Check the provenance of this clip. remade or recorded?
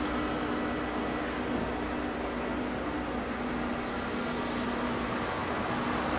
recorded